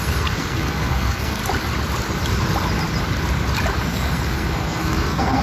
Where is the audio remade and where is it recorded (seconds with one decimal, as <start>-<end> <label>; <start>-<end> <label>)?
0.0-1.4 remade; 1.4-3.8 recorded; 3.8-5.4 remade